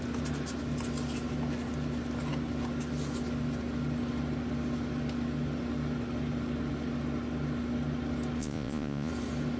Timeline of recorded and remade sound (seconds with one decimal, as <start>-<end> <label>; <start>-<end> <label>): 0.0-8.4 recorded; 8.4-9.1 remade; 9.1-9.6 recorded